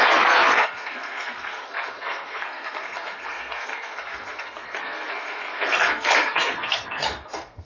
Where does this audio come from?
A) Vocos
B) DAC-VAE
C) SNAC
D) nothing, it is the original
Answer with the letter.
C